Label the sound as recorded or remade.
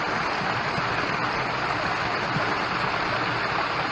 recorded